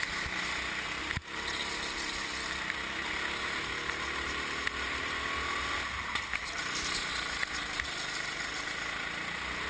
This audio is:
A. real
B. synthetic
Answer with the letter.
A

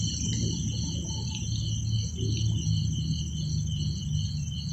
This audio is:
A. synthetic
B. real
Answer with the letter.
B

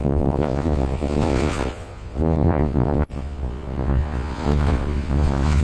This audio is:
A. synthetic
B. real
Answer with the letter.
A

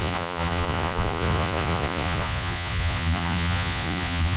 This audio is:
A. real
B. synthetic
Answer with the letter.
B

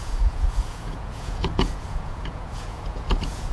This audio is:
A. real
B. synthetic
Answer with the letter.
B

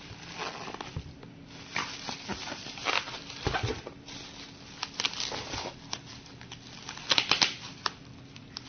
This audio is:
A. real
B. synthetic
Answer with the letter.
A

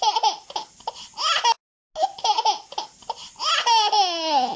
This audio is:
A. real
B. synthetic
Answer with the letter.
A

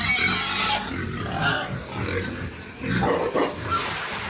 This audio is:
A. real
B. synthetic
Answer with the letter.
A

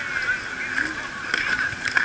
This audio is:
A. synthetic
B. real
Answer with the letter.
B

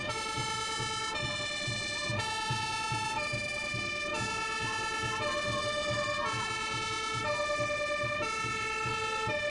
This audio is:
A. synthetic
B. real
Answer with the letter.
B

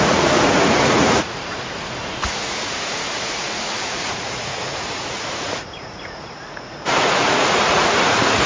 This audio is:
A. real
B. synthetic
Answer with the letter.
B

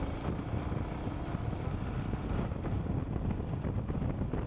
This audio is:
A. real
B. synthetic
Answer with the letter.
A